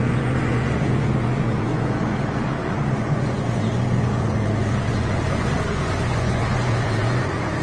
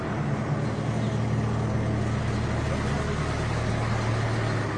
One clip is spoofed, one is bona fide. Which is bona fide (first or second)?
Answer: second